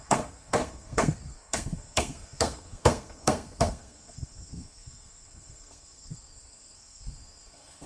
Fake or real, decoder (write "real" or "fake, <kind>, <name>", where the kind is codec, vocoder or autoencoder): fake, codec, SNAC